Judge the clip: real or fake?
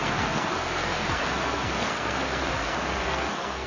fake